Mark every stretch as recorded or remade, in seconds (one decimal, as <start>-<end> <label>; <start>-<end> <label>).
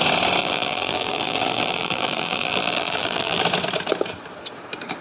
0.0-0.4 recorded; 0.4-3.4 remade; 3.4-5.0 recorded